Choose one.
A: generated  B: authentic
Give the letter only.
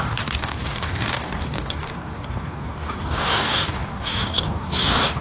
A